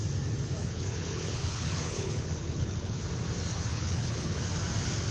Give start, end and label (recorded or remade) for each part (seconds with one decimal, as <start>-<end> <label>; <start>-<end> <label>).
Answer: 0.0-0.6 recorded; 0.6-3.0 remade; 3.0-3.7 recorded; 3.7-4.4 remade; 4.4-5.1 recorded

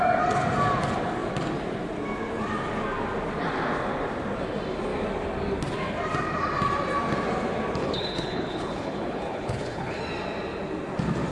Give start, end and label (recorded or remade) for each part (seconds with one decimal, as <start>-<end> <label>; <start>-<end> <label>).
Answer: 0.0-7.8 recorded; 7.8-10.0 remade; 10.0-11.3 recorded

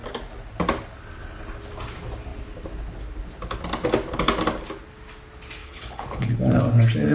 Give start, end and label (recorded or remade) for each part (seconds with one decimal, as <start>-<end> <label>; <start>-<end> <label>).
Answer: 0.0-5.6 recorded; 5.6-6.6 remade; 6.6-7.1 recorded

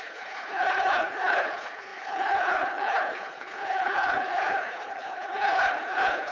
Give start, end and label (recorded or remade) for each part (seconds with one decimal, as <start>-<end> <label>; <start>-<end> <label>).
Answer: 0.0-6.3 remade

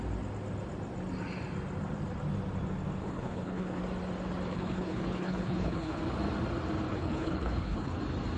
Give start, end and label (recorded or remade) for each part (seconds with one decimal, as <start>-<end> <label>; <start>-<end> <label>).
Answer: 0.0-3.0 recorded; 3.0-3.8 remade; 3.8-4.5 recorded; 4.5-6.0 remade; 6.0-6.9 recorded; 6.9-8.0 remade; 8.0-8.4 recorded